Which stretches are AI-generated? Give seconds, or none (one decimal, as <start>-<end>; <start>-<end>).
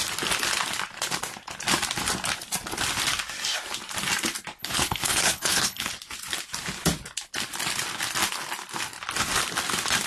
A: 4.6-5.9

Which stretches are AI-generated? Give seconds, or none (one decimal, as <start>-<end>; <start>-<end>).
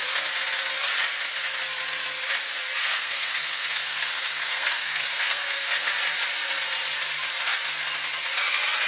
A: 2.8-5.9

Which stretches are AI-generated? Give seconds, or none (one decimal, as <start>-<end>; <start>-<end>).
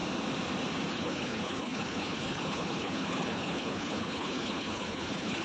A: 0.9-5.4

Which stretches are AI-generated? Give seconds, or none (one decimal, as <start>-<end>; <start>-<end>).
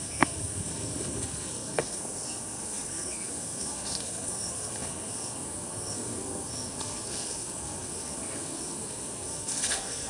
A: 0.0-10.1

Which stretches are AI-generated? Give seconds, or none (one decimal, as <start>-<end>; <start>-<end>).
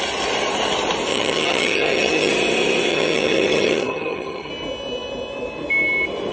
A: 1.1-2.3; 2.9-4.5